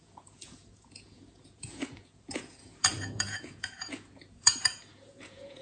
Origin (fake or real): fake